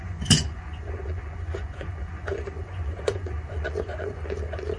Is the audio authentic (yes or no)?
no